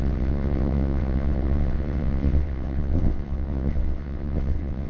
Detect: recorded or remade remade